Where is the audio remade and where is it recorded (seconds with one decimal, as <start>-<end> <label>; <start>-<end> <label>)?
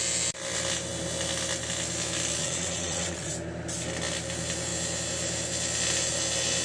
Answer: 0.0-2.4 recorded; 2.4-3.3 remade; 3.3-6.6 recorded